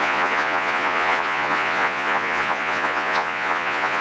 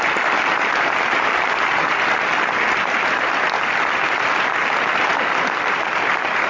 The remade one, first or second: first